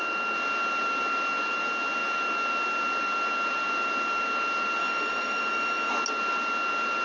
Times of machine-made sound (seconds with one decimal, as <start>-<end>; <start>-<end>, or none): 4.8-5.9

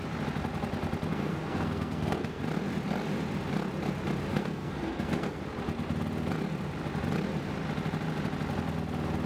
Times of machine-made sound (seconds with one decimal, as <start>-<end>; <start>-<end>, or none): 1.1-2.4; 4.3-5.4

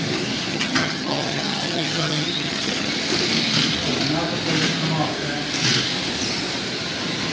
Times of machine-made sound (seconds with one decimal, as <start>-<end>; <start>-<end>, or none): 0.5-2.9

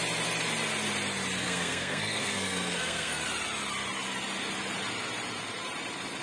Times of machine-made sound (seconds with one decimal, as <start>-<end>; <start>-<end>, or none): 1.4-3.2

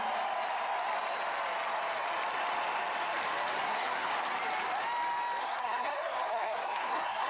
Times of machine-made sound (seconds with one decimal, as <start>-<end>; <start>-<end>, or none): 3.5-4.1; 5.4-7.3

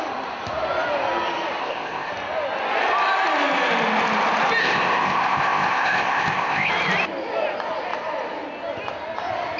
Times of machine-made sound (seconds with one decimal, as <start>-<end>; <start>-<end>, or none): 1.6-2.1; 4.6-6.7